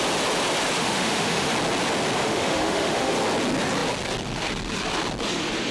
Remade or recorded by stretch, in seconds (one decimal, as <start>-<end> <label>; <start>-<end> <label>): 0.0-0.8 recorded; 0.8-1.5 remade; 1.5-2.2 recorded; 2.2-3.1 remade; 3.1-5.7 recorded